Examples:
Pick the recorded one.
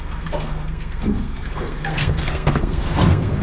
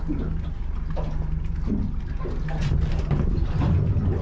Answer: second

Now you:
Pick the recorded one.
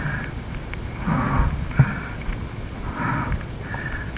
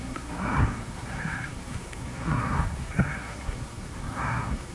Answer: first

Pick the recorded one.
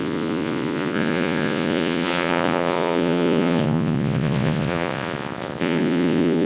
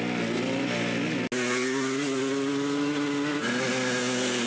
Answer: second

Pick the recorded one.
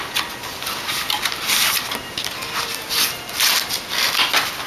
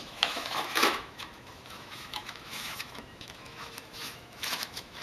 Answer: first